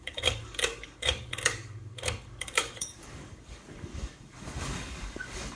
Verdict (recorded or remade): remade